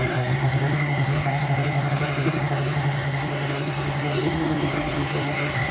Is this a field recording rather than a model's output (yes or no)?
no